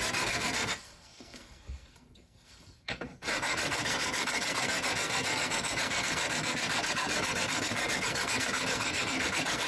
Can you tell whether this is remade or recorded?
remade